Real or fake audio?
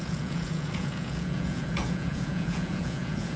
fake